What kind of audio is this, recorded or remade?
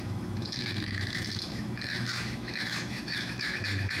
remade